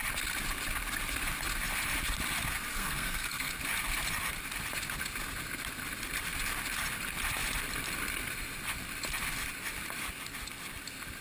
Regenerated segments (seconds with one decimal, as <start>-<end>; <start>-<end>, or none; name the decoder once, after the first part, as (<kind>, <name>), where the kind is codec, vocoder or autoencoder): 2.7-3.5 (codec, SNAC)